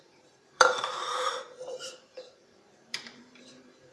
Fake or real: fake